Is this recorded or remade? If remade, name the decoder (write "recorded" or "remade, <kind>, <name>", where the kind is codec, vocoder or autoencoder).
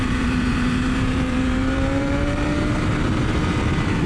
remade, vocoder, BigVGAN v2